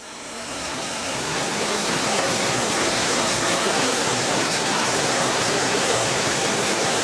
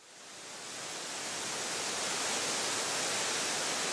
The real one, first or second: second